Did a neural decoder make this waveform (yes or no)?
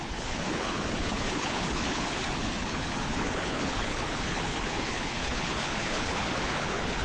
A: yes